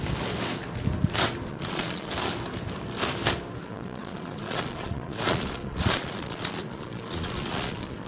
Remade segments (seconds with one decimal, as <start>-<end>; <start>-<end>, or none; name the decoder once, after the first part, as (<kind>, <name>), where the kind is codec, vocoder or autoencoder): 1.5-2.1 (vocoder, Vocos); 3.6-8.1